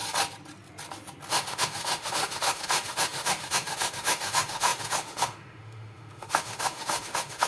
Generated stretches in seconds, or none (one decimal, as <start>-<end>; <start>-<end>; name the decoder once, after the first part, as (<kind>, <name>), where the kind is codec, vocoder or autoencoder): 1.3-7.5 (autoencoder, DAC-VAE)